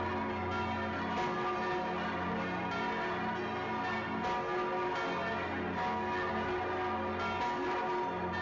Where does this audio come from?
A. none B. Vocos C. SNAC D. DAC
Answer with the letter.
A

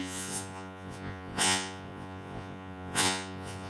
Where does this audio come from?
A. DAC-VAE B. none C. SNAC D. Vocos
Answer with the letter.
D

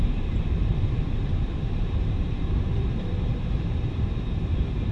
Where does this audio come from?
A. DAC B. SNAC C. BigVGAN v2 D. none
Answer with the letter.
C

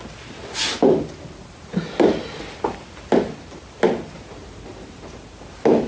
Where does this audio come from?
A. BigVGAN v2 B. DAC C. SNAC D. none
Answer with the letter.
D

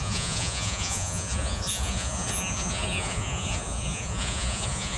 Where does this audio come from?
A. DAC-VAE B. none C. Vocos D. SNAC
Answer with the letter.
C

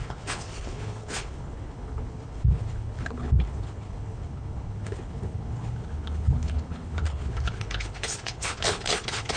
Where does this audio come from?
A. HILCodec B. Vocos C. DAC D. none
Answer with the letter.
A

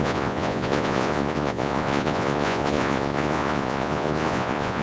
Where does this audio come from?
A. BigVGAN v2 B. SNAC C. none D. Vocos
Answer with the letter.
D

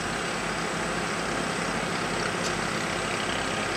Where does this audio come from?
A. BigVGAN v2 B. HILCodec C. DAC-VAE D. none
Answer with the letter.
D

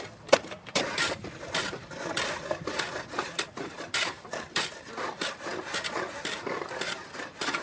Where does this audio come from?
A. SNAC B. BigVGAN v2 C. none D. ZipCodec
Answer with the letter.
B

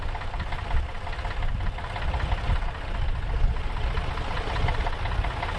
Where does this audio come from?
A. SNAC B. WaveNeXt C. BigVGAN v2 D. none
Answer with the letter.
D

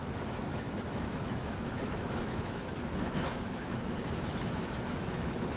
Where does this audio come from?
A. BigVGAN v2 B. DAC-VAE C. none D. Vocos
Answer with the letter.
B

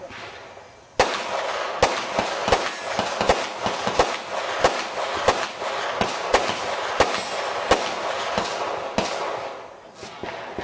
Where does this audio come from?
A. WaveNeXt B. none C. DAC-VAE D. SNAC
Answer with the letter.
B